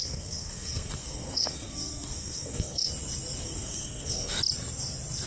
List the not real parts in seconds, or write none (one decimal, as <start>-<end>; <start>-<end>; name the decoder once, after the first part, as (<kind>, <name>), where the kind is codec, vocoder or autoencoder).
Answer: 0.0-2.9 (codec, SNAC); 3.4-4.4